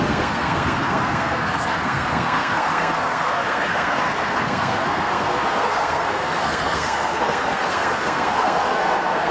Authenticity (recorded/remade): remade